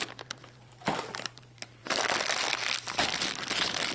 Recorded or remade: remade